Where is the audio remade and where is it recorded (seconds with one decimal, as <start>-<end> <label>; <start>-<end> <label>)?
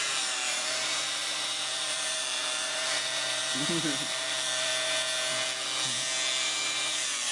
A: 0.0-4.7 remade; 4.7-6.4 recorded; 6.4-7.3 remade